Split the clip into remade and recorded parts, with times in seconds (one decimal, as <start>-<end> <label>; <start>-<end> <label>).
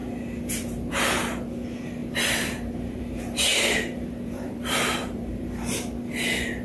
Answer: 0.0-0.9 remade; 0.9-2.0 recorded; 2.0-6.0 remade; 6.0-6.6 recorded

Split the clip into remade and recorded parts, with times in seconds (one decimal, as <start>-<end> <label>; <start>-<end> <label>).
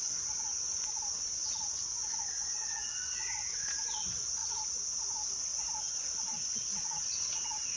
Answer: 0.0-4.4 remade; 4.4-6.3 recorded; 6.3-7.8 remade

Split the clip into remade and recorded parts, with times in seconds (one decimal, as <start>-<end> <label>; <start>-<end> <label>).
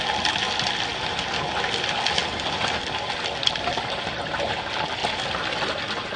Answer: 0.0-6.2 recorded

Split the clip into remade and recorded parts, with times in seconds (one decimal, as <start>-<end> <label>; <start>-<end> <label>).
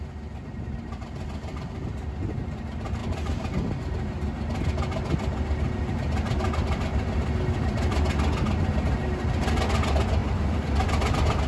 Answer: 0.0-11.5 recorded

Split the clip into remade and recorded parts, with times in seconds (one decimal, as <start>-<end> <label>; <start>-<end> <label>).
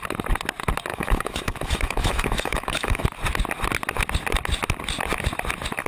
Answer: 0.0-0.9 recorded; 0.9-3.0 remade; 3.0-5.9 recorded